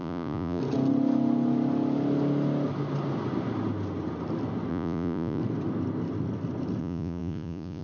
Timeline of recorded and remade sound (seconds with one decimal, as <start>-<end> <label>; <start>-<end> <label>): 0.0-0.6 remade; 0.6-4.7 recorded; 4.7-5.4 remade; 5.4-6.8 recorded; 6.8-7.8 remade